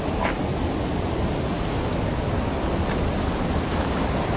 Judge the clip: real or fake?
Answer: real